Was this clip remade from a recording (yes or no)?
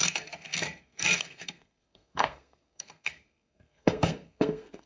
yes